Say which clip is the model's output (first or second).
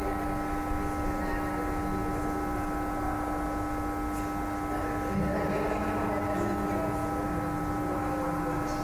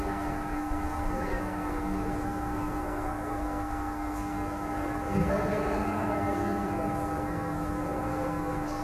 second